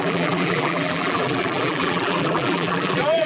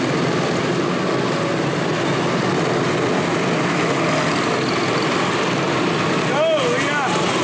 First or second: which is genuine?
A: second